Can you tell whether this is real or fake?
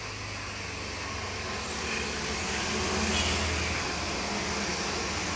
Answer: real